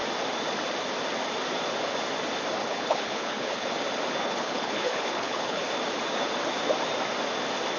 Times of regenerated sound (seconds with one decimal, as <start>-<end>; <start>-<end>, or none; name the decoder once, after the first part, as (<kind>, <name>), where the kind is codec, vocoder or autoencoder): 2.6-3.7 (codec, HILCodec); 4.2-5.6